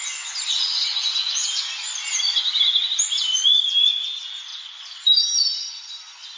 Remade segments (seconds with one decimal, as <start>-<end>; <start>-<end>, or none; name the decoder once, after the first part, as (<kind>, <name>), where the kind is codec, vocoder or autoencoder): none